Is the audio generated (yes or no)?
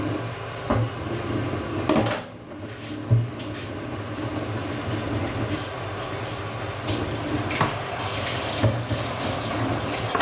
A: no